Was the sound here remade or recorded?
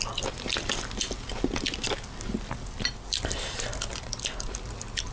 recorded